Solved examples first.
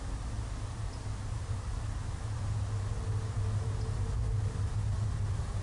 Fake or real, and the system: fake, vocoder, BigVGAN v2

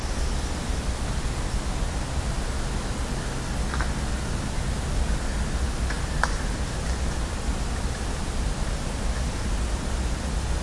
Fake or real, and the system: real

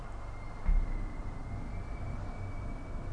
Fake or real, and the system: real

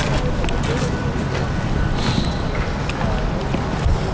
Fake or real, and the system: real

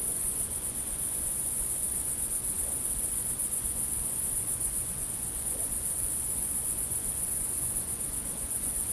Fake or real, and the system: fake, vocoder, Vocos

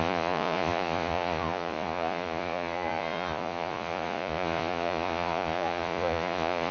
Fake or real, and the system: fake, vocoder, Vocos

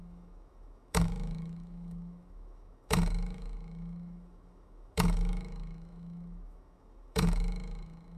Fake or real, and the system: fake, autoencoder, DAC-VAE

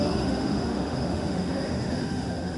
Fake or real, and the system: fake, autoencoder, DAC-VAE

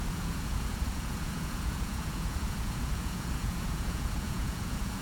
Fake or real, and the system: fake, vocoder, Vocos